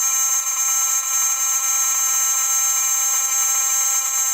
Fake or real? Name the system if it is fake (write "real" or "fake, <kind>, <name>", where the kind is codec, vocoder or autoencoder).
real